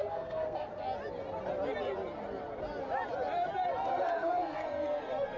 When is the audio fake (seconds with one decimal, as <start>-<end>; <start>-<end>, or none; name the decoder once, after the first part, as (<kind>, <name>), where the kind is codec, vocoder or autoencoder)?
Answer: 0.0-0.7 (codec, SNAC); 3.9-5.4